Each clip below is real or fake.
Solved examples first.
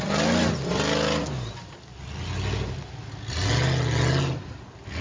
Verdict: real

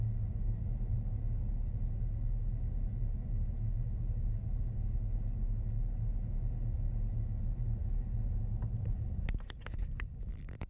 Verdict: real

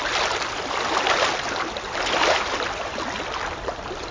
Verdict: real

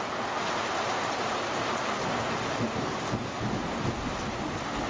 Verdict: real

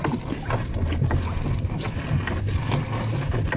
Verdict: real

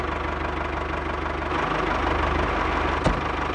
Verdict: real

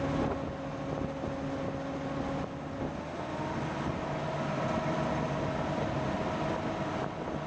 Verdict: real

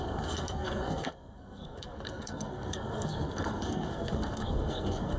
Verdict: fake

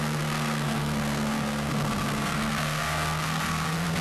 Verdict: fake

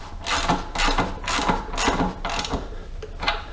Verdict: real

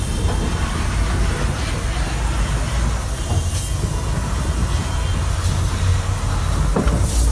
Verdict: real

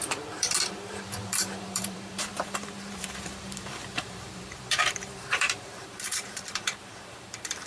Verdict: fake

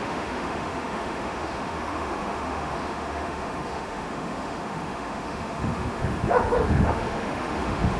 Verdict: fake